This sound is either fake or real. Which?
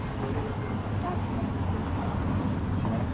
real